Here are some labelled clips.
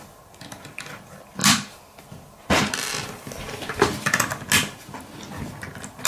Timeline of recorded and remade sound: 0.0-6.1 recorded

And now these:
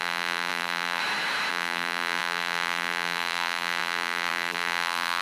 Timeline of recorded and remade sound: 0.0-1.0 remade; 1.0-1.5 recorded; 1.5-5.2 remade